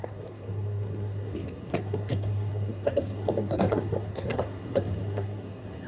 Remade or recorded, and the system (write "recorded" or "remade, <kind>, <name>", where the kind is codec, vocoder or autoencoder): remade, codec, SNAC